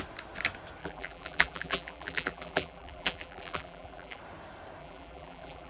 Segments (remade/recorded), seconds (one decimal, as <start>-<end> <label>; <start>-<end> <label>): 0.0-0.8 recorded; 0.8-4.2 remade; 4.2-4.8 recorded; 4.8-5.7 remade